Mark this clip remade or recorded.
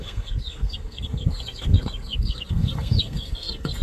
remade